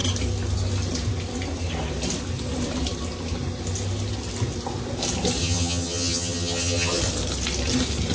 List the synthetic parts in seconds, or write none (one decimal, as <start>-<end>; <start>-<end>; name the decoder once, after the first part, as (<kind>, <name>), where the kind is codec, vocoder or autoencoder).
5.4-7.0 (vocoder, HiFi-GAN)